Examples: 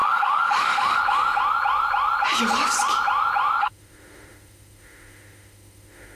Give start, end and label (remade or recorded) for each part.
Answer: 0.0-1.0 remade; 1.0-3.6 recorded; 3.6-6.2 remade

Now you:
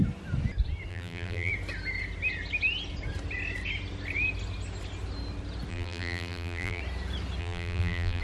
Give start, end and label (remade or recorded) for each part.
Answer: 0.0-0.9 recorded; 0.9-1.5 remade; 1.5-5.7 recorded; 5.7-6.8 remade; 6.8-7.4 recorded; 7.4-8.2 remade

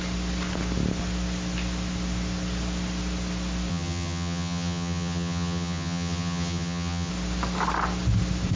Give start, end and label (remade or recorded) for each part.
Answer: 0.0-3.7 recorded; 3.7-7.1 remade; 7.1-8.6 recorded

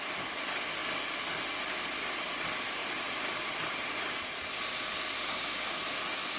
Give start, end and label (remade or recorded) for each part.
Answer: 0.0-6.4 recorded